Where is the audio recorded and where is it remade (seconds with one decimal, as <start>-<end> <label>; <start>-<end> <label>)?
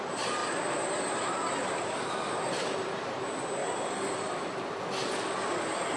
0.0-6.0 recorded